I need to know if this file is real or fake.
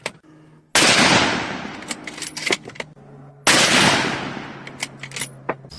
real